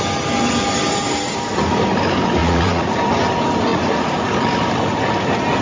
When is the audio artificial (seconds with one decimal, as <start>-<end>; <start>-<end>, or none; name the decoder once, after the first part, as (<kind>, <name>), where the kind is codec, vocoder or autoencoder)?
2.4-3.0 (vocoder, Vocos); 3.7-4.3